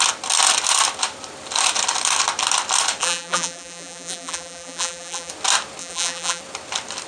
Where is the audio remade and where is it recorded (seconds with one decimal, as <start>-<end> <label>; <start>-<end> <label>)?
0.0-3.0 recorded; 3.0-5.3 remade; 5.3-5.8 recorded; 5.8-6.4 remade; 6.4-7.1 recorded